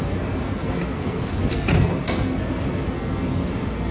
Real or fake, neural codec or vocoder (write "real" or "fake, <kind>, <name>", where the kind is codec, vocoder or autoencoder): fake, codec, SNAC